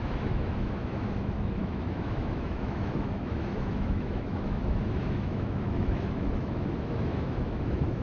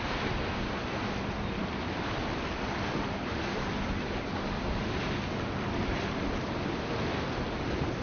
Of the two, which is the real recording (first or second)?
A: second